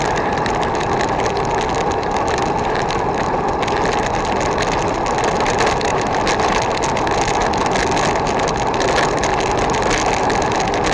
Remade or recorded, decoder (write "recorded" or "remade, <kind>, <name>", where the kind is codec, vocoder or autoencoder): recorded